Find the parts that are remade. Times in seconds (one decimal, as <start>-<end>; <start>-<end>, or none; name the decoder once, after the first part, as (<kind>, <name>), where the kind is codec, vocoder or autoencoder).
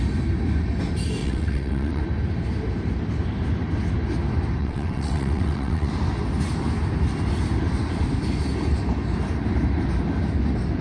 1.2-2.0 (vocoder, WaveNeXt); 4.6-5.9